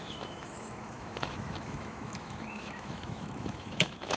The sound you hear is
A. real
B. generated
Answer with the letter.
B